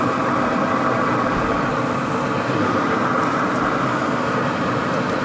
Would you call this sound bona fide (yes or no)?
yes